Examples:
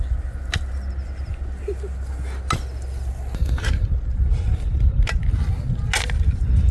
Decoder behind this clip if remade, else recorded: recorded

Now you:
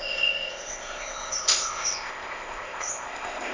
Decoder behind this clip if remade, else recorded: remade, codec, ZipCodec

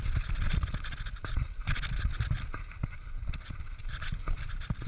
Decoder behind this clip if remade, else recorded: recorded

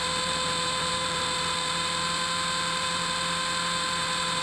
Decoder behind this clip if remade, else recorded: remade, vocoder, BigVGAN v2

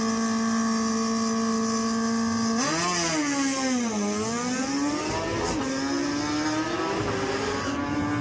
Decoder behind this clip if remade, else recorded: recorded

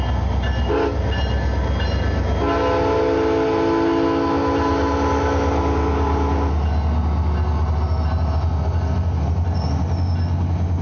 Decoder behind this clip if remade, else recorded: recorded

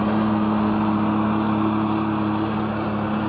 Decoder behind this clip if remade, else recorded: recorded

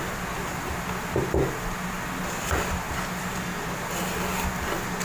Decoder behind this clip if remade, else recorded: recorded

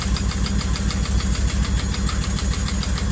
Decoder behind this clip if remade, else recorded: recorded